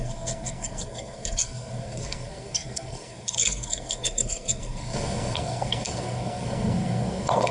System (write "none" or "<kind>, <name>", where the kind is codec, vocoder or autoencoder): codec, SNAC